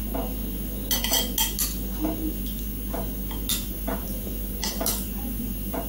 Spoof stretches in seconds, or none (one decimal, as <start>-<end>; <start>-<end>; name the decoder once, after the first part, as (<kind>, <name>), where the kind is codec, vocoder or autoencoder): 3.5-5.9 (vocoder, BigVGAN v2)